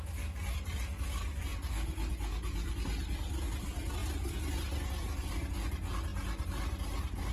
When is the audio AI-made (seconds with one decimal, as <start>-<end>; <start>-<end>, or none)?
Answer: none